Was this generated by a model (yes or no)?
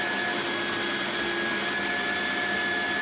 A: no